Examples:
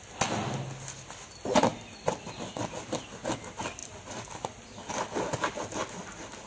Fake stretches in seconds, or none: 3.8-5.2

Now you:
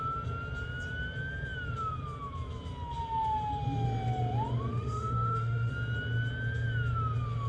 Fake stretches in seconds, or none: 4.7-5.7

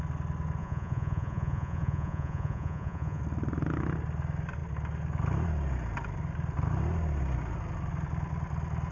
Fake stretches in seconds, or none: 0.6-3.2

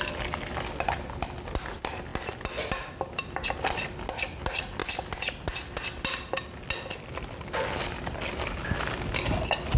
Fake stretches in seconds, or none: none

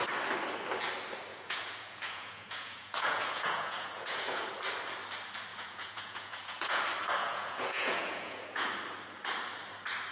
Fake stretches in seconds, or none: 1.3-4.5; 5.5-6.8; 7.2-8.7